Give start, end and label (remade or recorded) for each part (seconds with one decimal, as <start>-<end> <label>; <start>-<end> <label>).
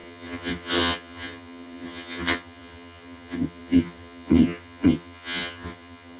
0.0-6.2 remade